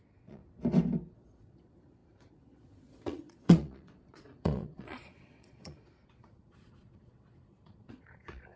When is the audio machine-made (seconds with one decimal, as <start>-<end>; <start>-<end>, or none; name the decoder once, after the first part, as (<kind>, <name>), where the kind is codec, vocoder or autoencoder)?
0.0-0.4 (vocoder, Vocos); 1.2-8.6